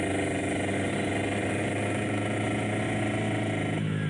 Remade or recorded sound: recorded